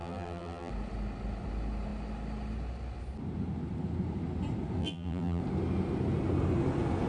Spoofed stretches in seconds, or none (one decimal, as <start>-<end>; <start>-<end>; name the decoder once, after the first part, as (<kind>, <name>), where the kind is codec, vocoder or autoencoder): 0.0-0.7 (vocoder, BigVGAN v2); 4.8-5.4

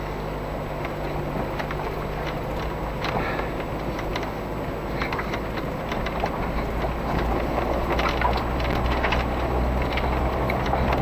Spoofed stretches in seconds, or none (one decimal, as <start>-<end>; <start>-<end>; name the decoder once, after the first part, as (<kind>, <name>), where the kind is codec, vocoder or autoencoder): none

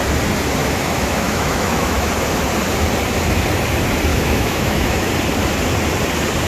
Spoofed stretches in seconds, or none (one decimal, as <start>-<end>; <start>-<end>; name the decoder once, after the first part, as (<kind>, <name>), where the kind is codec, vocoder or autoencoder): 0.6-2.1 (autoencoder, DAC-VAE); 4.1-5.1

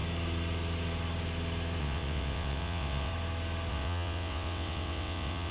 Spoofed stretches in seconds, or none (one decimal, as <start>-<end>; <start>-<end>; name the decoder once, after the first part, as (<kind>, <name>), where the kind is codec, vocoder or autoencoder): 1.8-3.1 (vocoder, WaveNeXt); 3.7-5.5